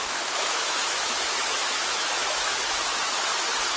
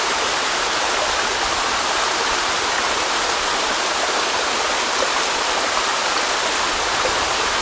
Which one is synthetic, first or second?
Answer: first